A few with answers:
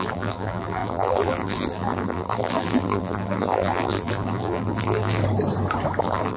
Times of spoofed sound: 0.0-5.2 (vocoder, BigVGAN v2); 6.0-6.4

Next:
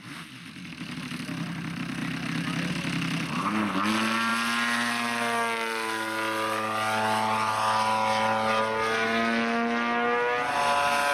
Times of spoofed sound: none